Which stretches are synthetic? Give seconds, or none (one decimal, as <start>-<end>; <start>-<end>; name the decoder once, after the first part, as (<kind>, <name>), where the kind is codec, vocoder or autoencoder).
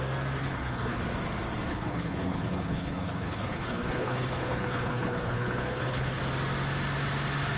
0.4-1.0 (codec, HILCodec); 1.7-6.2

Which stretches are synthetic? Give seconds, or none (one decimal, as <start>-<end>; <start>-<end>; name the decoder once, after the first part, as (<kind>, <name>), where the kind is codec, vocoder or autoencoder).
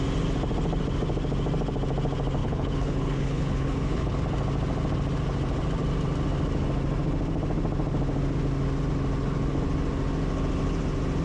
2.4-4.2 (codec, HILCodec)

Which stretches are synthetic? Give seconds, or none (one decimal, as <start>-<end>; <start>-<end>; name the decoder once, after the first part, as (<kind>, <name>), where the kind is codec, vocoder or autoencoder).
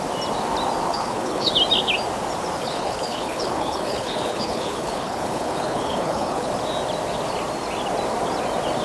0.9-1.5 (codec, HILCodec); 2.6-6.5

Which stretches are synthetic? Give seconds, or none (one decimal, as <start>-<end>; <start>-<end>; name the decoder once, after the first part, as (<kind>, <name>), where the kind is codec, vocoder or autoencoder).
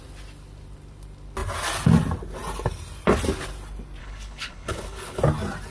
4.0-5.2 (codec, HILCodec)